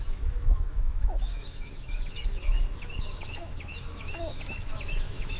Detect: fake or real fake